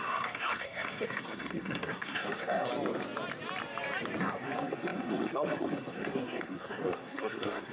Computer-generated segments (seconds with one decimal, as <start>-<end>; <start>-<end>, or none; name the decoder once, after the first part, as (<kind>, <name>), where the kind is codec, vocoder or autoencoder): 0.0-2.7 (codec, SNAC); 4.2-7.7